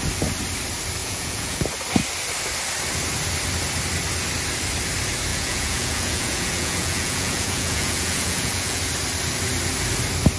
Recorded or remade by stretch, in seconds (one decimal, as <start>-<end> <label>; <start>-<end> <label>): 0.0-1.0 recorded; 1.0-1.6 remade; 1.6-5.3 recorded; 5.3-8.8 remade; 8.8-10.4 recorded